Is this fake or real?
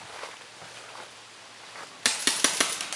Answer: real